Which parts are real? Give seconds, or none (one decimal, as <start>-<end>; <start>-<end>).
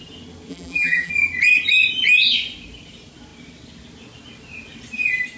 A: 0.0-0.5; 1.1-5.4